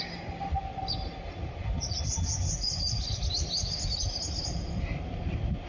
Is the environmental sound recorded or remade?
recorded